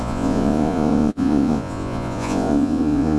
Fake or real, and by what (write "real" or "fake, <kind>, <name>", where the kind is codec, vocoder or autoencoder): fake, vocoder, Vocos